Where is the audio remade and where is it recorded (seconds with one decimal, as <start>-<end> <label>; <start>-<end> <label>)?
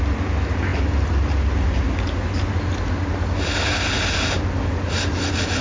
0.0-5.6 recorded